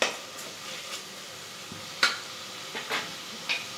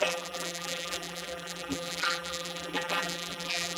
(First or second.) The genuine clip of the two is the first